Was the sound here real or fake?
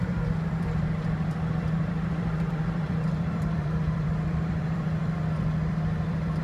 fake